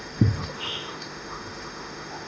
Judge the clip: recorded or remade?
remade